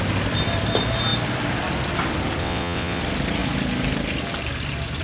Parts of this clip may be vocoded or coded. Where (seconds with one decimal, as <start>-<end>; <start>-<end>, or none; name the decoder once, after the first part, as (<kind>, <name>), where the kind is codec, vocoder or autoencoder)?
2.4-3.0 (vocoder, WaveNeXt)